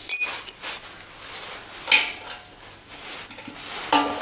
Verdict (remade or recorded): recorded